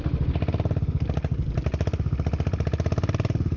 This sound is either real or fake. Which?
real